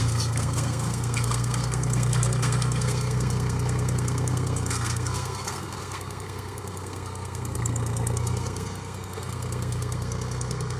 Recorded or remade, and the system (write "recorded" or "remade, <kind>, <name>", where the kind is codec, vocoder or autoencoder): remade, codec, SNAC